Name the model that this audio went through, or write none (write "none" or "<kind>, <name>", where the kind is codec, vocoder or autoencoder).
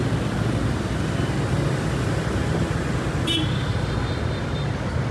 none